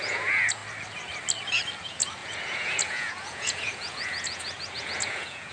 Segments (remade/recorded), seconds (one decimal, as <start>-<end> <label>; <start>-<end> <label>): 0.0-0.6 remade; 0.6-1.8 recorded; 1.8-5.5 remade